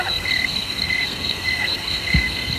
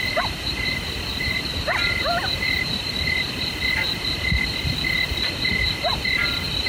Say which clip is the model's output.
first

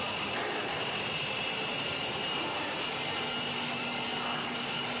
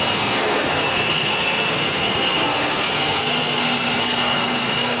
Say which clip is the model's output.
second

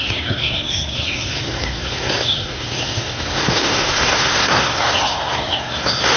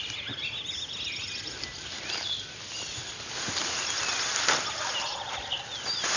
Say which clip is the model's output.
first